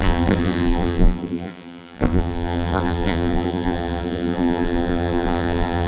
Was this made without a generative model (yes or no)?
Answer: no